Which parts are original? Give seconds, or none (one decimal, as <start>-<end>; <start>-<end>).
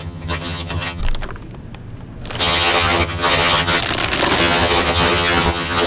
1.0-2.4; 3.8-4.4